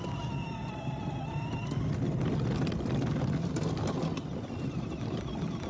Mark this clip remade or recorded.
recorded